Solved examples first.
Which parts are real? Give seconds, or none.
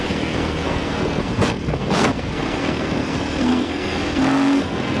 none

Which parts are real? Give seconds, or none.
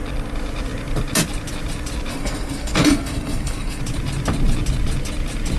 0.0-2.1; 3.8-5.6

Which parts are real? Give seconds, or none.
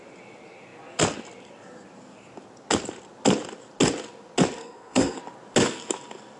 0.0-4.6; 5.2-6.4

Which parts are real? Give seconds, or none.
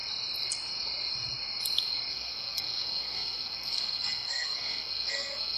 0.0-2.1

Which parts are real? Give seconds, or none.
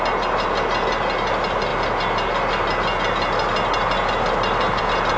0.0-5.2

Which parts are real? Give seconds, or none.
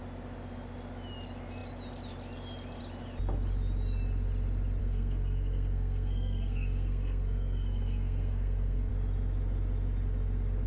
0.0-4.8; 8.9-10.7